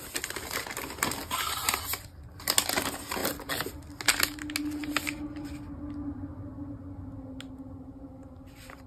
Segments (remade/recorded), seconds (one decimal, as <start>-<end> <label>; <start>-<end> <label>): 0.0-3.2 recorded; 3.2-3.7 remade; 3.7-8.2 recorded; 8.2-8.9 remade